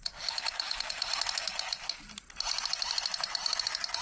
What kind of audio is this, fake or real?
real